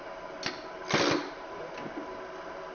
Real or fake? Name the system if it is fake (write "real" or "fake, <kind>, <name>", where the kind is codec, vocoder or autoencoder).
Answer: real